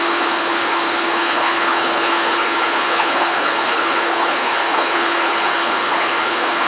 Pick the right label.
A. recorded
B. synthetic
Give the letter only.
B